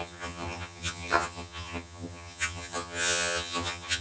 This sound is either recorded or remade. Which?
remade